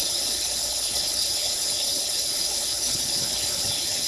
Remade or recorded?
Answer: remade